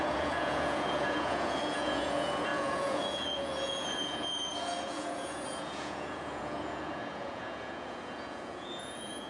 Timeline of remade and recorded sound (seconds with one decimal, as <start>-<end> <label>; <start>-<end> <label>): 0.0-9.3 remade